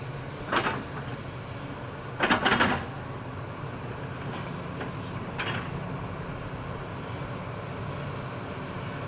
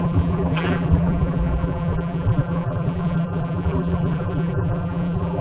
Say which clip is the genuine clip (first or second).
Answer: first